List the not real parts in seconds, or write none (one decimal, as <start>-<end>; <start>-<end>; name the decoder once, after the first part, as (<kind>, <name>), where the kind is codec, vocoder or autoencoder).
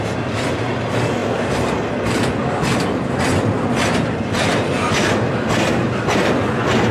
none